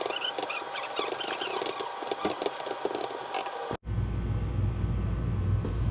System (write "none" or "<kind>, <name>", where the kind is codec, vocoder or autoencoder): none